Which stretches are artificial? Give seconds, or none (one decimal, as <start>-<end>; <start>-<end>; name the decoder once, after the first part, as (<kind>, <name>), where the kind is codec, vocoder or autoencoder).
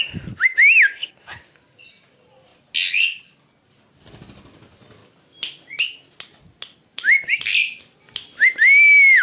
none